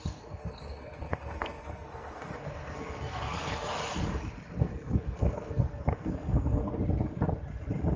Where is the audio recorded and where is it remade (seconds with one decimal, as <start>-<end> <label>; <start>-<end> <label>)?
0.0-3.8 remade; 3.8-4.6 recorded; 4.6-6.7 remade; 6.7-8.0 recorded